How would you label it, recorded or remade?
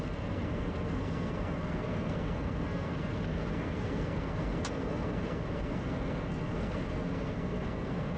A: remade